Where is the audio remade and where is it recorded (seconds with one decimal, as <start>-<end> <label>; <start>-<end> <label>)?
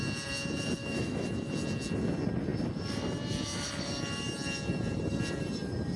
0.0-0.8 recorded; 0.8-1.3 remade; 1.3-6.0 recorded